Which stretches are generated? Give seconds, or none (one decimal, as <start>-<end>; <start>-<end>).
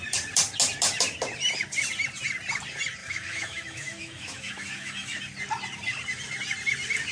3.0-5.2